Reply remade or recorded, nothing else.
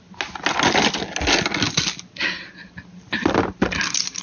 recorded